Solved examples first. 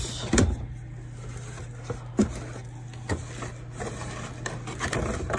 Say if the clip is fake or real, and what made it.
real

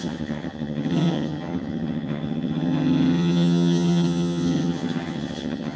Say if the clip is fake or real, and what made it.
fake, vocoder, HiFi-GAN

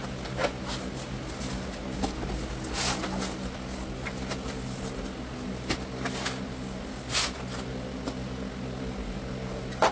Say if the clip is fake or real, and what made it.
real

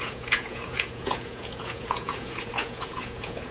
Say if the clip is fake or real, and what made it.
fake, vocoder, Vocos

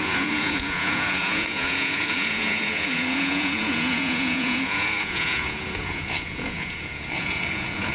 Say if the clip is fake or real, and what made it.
fake, vocoder, Vocos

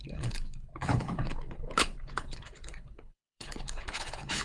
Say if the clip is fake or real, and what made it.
fake, codec, HILCodec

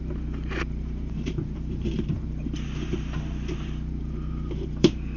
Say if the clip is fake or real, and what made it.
fake, vocoder, BigVGAN v2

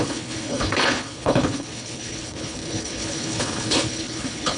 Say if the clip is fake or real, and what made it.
fake, codec, HILCodec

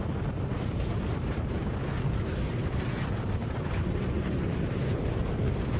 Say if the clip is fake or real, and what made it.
fake, vocoder, BigVGAN v2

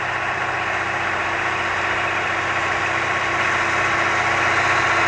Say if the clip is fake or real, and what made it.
real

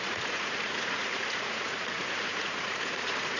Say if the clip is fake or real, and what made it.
fake, vocoder, Vocos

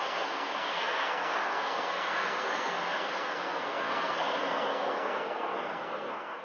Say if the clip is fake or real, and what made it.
fake, codec, SNAC